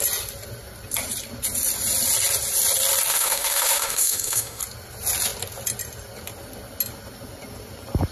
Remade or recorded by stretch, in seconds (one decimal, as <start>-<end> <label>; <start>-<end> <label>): 0.0-3.1 recorded; 3.1-4.6 remade; 4.6-8.1 recorded

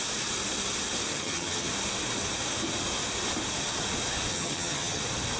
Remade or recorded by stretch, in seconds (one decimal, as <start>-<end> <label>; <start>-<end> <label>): 0.0-1.1 recorded; 1.1-1.7 remade; 1.7-4.3 recorded; 4.3-5.0 remade; 5.0-5.4 recorded

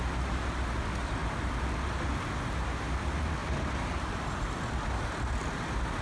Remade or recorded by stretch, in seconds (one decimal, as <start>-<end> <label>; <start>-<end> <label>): 0.0-6.0 recorded

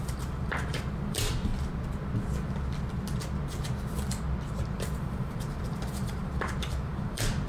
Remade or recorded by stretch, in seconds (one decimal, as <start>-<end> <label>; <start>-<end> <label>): 0.0-1.5 remade; 1.5-4.5 recorded; 4.5-7.5 remade